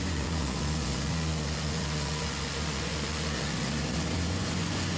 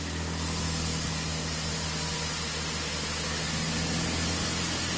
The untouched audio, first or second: second